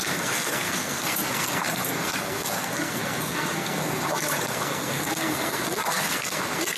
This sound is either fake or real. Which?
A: fake